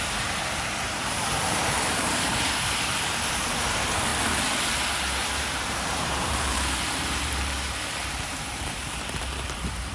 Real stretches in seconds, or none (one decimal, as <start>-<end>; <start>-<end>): 4.1-5.3